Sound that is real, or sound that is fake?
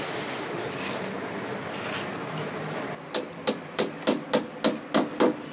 real